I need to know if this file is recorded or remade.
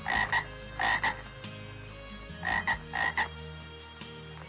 recorded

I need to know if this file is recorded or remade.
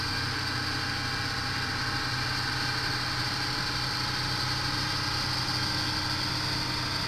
recorded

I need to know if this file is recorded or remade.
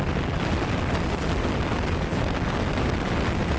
recorded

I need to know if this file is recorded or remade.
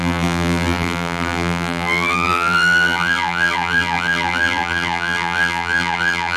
remade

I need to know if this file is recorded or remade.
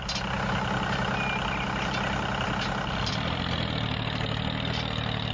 recorded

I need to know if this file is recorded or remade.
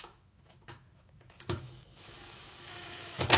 remade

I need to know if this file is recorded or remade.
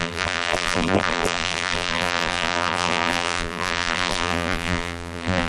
remade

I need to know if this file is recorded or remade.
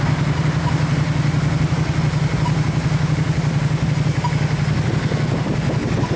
recorded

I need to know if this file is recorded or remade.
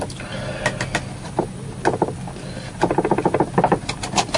recorded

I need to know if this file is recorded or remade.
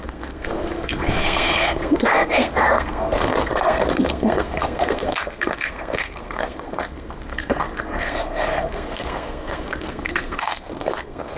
remade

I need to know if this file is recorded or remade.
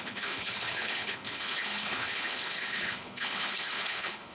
remade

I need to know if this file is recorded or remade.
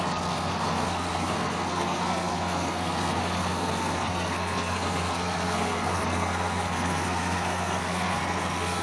remade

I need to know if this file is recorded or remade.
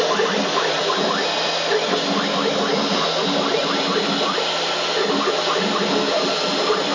recorded